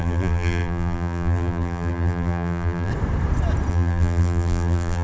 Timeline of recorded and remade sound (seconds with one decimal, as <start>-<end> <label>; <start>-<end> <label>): 0.0-2.9 remade; 2.9-3.7 recorded; 3.7-5.0 remade